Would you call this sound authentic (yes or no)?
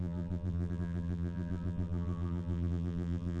no